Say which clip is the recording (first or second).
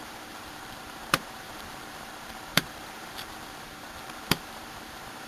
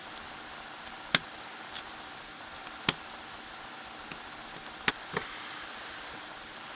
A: second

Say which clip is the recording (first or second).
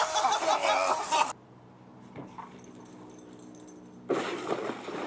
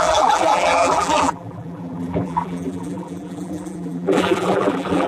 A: first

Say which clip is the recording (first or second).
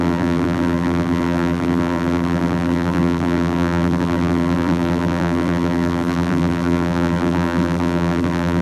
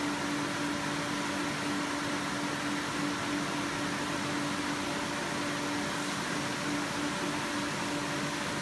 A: second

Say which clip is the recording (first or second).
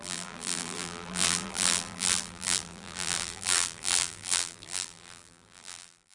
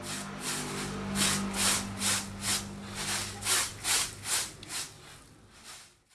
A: second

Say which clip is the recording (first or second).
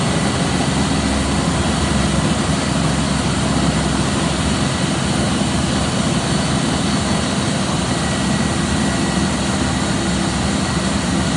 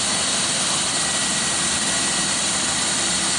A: first